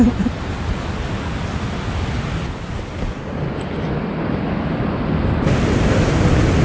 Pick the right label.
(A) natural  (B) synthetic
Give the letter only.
A